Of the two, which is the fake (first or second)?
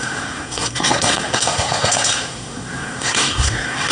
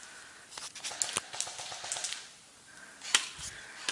first